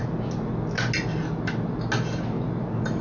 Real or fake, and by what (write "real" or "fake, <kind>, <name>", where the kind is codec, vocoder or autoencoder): real